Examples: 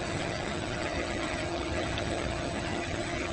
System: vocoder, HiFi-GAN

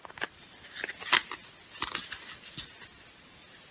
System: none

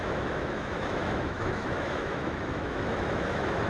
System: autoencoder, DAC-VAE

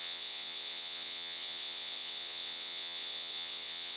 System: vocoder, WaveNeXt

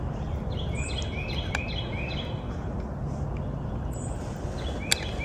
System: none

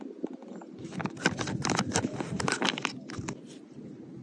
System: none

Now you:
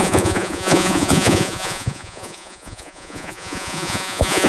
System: vocoder, Vocos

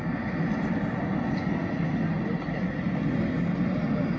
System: none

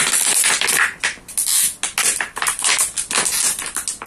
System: none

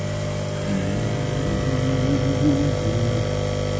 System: none